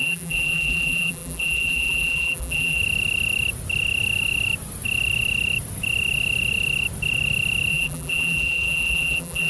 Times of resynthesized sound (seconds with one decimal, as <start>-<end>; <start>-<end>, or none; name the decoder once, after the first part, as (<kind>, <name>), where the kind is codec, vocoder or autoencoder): 0.0-2.8 (vocoder, BigVGAN v2); 7.7-9.5